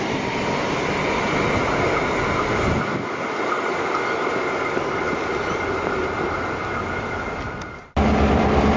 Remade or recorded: recorded